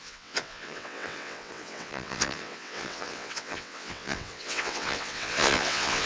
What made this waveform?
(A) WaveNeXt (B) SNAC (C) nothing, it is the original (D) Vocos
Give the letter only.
A